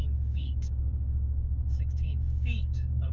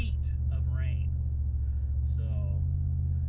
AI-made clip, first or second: first